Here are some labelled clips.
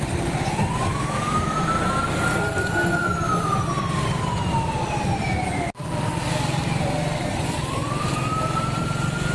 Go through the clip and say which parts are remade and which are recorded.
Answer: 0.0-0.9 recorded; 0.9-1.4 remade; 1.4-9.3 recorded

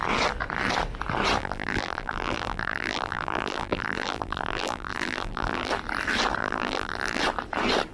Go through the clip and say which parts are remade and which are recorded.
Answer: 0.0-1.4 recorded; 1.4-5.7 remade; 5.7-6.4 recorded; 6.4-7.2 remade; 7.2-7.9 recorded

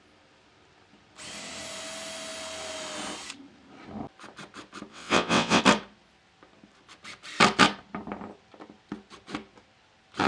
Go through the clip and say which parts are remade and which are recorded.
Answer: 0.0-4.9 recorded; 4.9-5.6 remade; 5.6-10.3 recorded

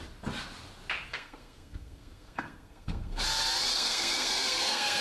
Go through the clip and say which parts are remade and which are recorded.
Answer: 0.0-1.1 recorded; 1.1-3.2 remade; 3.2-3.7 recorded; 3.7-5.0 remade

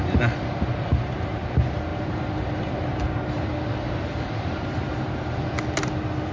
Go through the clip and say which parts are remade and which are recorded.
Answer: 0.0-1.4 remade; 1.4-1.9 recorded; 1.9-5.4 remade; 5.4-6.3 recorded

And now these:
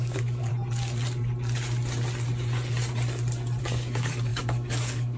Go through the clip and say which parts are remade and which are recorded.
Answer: 0.0-0.5 remade; 0.5-3.6 recorded; 3.6-5.2 remade